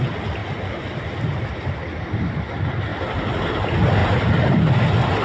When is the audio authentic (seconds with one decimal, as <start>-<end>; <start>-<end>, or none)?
0.0-2.9; 3.5-4.0

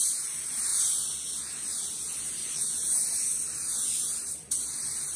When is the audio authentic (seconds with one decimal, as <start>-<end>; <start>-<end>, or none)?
0.7-1.9; 3.3-4.2

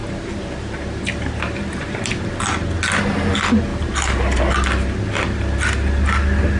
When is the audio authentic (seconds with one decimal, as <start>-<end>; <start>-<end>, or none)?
2.2-3.7; 4.4-6.6

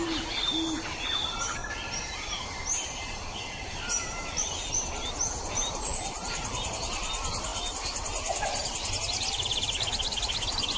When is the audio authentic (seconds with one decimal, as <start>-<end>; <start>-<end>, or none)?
0.0-1.6; 4.7-5.9; 6.7-10.8

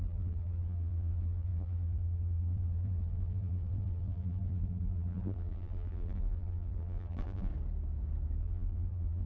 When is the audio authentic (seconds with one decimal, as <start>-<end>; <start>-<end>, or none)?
7.5-8.4

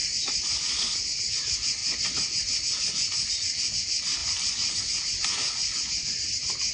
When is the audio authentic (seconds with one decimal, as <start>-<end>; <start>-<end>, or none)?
0.0-4.2; 4.8-6.7

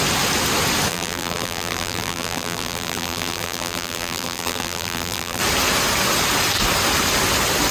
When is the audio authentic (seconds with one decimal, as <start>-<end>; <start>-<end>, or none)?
0.0-0.9; 5.4-7.7

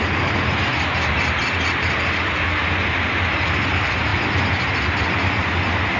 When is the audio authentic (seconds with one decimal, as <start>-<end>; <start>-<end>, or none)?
0.0-4.1